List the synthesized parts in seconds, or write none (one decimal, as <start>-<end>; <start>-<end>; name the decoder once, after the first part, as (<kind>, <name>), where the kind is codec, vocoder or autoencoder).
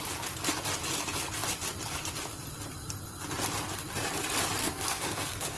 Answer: 4.6-5.6 (codec, SNAC)